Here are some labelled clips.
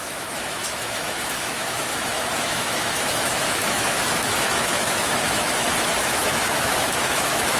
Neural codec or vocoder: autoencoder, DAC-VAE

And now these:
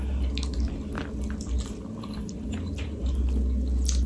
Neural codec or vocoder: none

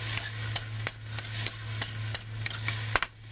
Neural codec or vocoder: none